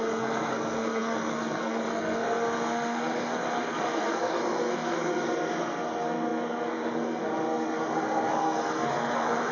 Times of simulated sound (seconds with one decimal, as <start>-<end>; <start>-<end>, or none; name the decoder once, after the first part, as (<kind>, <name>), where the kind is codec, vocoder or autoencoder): 0.0-9.5 (codec, SNAC)